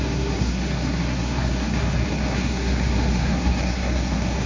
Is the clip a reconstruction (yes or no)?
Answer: yes